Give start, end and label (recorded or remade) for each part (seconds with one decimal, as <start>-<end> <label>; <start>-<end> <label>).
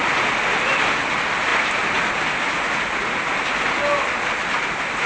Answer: 0.0-5.1 recorded